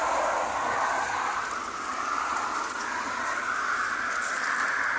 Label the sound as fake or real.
real